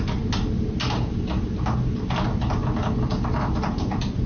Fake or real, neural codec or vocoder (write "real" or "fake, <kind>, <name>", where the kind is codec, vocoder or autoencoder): real